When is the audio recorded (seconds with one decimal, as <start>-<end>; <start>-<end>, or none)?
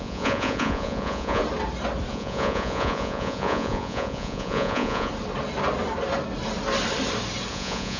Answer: 1.4-2.1; 5.1-7.5